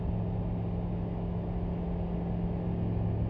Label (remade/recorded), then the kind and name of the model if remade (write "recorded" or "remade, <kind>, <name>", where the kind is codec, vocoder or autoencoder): recorded